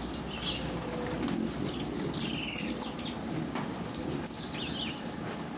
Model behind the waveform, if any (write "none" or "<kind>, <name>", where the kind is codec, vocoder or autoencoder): none